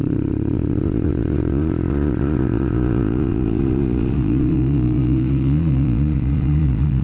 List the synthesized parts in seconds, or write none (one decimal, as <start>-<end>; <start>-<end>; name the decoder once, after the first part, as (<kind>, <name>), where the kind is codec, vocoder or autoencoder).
0.0-7.0 (vocoder, Vocos)